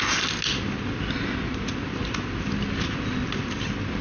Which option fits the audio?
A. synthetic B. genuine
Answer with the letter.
B